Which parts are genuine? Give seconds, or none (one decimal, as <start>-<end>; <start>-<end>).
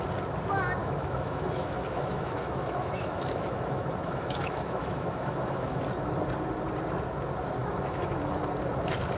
0.0-0.8; 5.8-7.6; 8.4-9.2